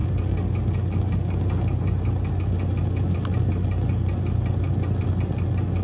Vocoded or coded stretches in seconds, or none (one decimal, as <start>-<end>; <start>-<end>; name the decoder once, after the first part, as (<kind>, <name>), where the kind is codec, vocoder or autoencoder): none